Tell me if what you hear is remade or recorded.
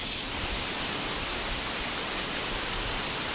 recorded